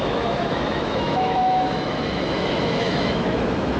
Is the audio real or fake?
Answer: fake